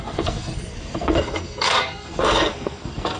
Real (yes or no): no